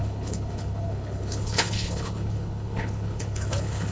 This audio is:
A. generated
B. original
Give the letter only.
A